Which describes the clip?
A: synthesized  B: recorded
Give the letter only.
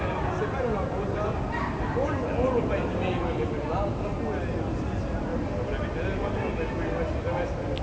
B